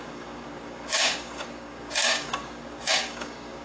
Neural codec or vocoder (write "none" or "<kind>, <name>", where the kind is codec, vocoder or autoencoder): codec, DAC